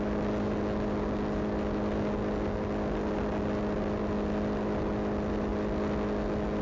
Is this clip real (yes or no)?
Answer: yes